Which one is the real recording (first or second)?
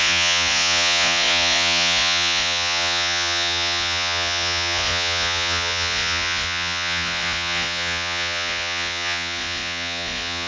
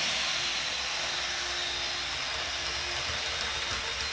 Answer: second